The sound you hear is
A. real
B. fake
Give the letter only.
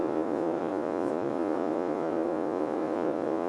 B